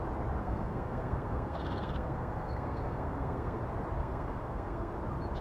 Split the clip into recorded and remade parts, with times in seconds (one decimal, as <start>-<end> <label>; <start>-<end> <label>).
0.0-0.4 recorded; 0.4-3.6 remade; 3.6-4.0 recorded; 4.0-4.9 remade; 4.9-5.4 recorded